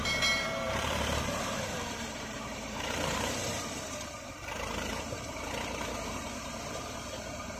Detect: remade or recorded remade